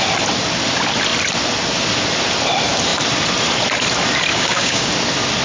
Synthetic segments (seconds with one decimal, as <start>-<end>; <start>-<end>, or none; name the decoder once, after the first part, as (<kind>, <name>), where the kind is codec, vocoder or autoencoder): 4.3-4.9 (codec, DAC)